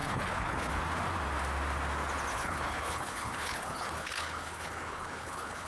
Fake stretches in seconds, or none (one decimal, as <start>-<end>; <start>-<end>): 0.0-0.7; 2.3-5.7